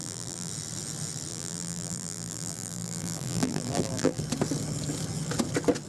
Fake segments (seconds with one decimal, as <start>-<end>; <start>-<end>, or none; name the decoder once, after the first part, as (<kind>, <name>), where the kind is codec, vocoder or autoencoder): 0.0-0.5 (vocoder, BigVGAN v2); 1.3-4.2